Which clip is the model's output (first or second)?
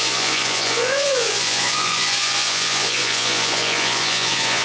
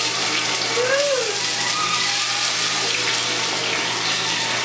first